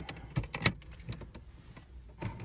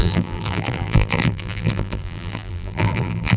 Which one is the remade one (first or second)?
second